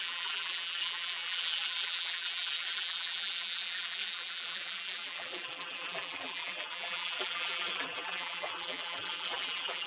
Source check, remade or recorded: remade